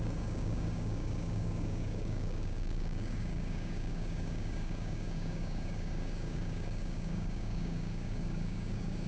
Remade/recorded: remade